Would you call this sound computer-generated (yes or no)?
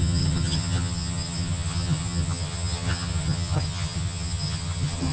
yes